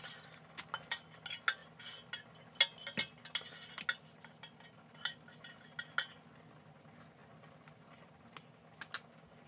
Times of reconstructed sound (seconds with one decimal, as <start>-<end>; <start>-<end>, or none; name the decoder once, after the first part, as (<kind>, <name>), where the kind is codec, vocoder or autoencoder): none